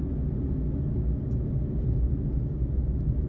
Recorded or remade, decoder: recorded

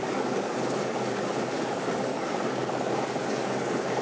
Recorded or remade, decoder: remade, codec, DAC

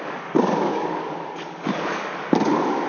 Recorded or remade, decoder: remade, codec, DAC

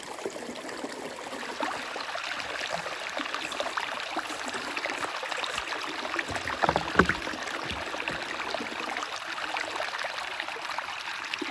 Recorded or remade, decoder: recorded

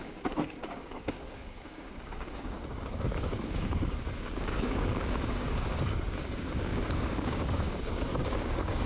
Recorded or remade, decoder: remade, codec, DAC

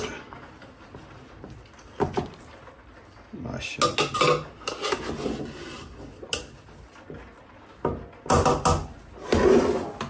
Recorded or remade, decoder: recorded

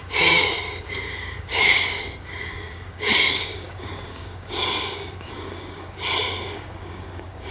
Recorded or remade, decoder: remade, codec, DAC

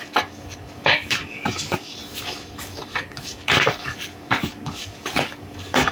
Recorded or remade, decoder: remade, codec, DAC